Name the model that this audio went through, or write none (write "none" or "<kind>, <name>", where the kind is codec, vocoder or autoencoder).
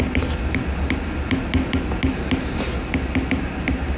none